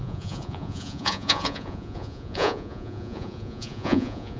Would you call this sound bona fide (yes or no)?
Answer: no